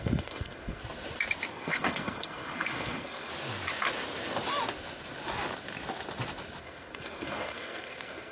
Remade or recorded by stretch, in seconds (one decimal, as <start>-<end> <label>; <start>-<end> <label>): 0.0-0.8 remade; 0.8-1.5 recorded; 1.5-3.3 remade; 3.3-6.6 recorded; 6.6-8.3 remade